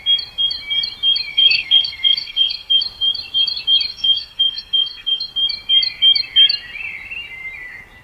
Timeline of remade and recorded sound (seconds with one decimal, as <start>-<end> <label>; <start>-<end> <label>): 0.0-1.3 recorded; 1.3-2.8 remade; 2.8-3.9 recorded; 3.9-5.3 remade; 5.3-8.0 recorded